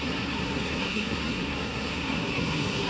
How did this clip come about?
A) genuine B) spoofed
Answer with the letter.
B